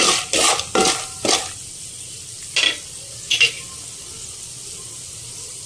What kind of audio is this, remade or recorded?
recorded